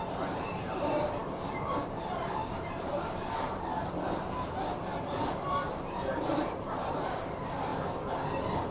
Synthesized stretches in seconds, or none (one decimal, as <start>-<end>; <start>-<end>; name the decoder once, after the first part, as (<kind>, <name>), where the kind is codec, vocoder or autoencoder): 0.0-7.7 (vocoder, BigVGAN v2)